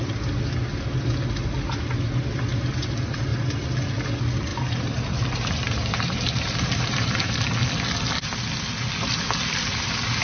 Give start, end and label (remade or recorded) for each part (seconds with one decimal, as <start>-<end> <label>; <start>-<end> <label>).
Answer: 0.0-3.3 recorded; 3.3-3.9 remade; 3.9-4.5 recorded; 4.5-7.4 remade; 7.4-10.2 recorded